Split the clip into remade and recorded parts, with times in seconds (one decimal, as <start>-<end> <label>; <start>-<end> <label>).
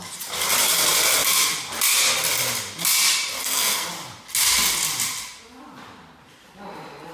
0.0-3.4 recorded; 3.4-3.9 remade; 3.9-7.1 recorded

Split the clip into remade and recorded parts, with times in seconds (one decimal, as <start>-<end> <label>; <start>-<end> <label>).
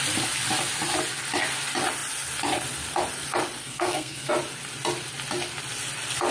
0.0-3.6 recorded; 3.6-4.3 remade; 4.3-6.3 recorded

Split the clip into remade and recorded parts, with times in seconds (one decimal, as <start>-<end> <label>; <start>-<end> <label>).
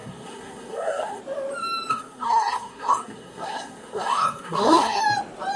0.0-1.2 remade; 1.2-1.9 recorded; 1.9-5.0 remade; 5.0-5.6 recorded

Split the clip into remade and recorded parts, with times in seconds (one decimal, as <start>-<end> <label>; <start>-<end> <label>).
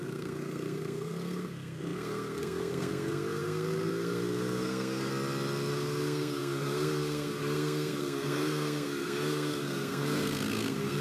0.0-5.1 remade; 5.1-5.7 recorded; 5.7-11.0 remade